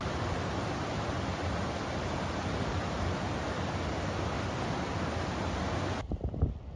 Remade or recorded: recorded